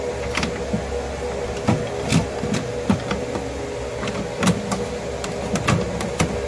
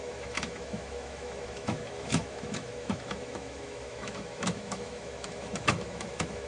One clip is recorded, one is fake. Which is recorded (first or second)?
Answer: first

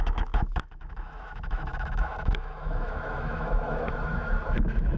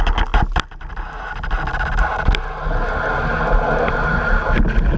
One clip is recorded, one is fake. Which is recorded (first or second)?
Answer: second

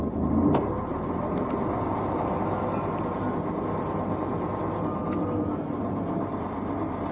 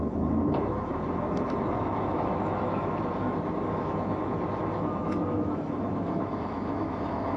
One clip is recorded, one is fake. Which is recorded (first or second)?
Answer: first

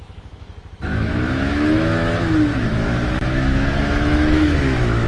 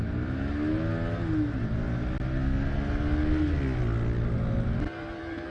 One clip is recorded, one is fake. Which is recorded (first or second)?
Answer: second